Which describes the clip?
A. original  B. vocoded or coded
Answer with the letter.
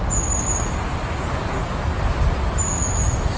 A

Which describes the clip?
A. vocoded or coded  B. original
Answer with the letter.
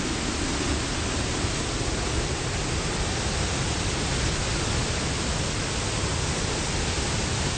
B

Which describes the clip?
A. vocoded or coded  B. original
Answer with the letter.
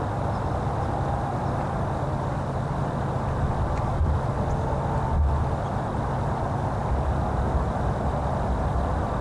B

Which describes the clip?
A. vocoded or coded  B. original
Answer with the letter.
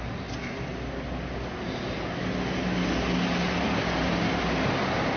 B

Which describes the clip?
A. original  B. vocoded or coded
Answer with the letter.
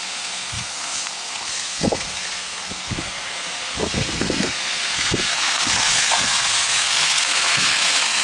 B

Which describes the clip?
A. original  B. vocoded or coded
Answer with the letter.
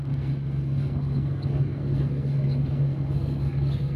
B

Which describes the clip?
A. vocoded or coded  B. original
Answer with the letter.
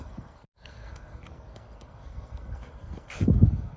A